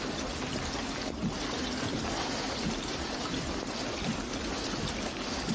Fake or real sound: real